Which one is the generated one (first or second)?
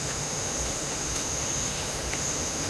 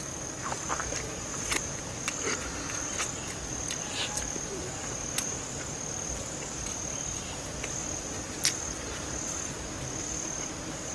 first